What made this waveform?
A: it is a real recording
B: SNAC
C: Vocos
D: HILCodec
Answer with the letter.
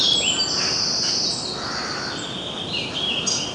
A